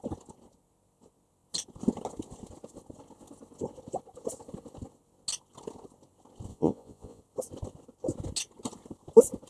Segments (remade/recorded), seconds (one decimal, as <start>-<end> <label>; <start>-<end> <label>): 0.0-6.5 recorded; 6.5-7.2 remade; 7.2-9.5 recorded